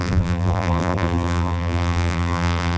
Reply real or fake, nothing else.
fake